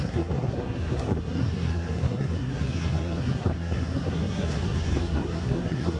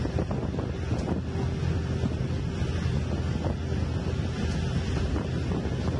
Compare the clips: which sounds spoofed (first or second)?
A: first